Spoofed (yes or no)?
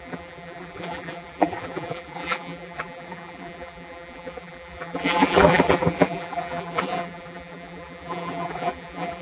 yes